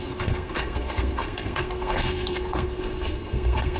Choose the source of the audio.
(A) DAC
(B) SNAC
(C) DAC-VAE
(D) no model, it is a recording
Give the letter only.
B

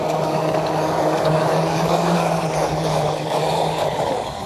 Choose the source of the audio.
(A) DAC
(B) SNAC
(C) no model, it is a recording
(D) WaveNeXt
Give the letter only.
A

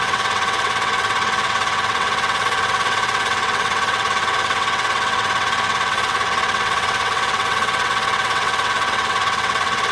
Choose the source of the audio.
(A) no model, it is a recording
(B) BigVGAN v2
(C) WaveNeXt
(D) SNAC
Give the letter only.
C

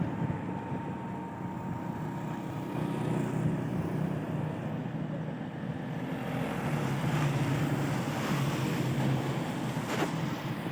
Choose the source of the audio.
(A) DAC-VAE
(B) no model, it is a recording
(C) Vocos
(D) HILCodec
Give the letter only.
B